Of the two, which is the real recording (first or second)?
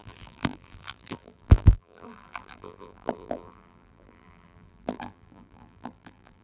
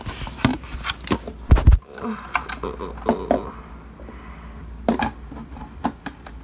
second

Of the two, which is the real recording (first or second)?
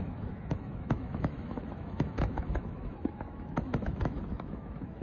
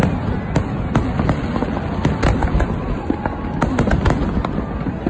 second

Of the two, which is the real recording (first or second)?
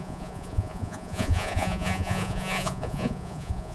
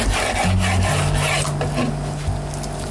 second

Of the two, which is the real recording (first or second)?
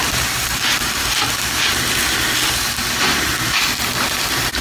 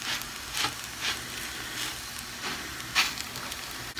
second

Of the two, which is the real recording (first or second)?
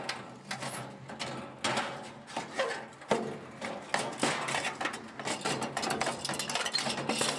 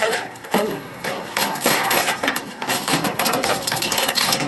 first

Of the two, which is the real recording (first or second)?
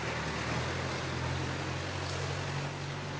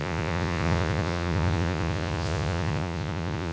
first